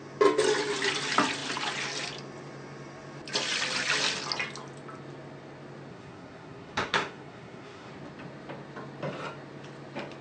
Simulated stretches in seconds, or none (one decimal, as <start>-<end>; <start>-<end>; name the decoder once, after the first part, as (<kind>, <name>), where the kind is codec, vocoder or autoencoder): 5.9-7.9 (codec, SNAC)